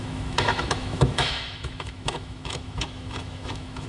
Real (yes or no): no